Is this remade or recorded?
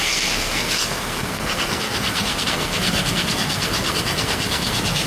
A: remade